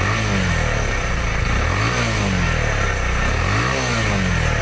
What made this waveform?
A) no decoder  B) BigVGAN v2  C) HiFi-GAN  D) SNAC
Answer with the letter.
A